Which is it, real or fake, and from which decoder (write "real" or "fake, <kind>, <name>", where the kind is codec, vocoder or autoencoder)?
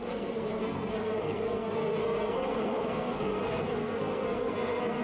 fake, codec, SNAC